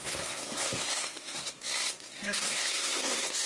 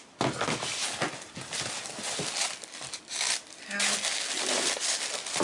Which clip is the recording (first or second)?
second